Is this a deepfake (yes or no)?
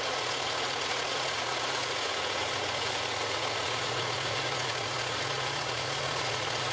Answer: yes